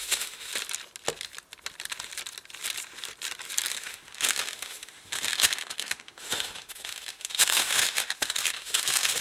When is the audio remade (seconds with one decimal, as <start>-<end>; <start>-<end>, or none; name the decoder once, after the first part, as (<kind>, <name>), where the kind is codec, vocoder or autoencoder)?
0.0-0.5 (autoencoder, DAC-VAE); 3.7-9.2